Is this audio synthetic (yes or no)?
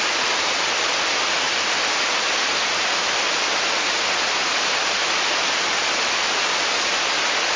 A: no